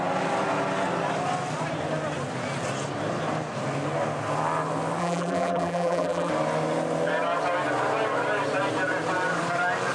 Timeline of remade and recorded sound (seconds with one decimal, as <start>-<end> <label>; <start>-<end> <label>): 0.0-5.0 recorded; 5.0-6.3 remade; 6.3-9.9 recorded